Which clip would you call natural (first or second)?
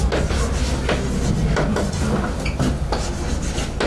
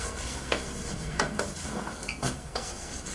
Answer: first